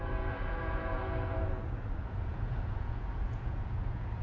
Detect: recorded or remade remade